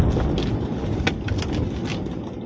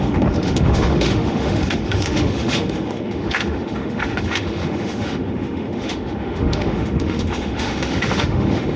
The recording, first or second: first